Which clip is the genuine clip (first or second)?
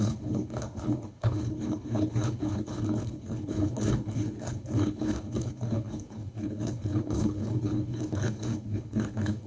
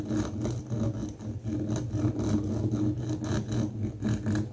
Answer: second